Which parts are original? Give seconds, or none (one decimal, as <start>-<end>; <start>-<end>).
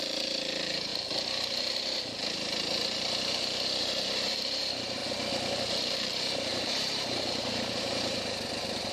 0.9-3.8; 5.0-5.6